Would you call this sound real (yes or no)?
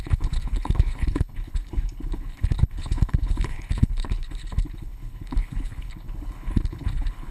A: no